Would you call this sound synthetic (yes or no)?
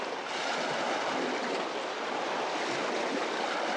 no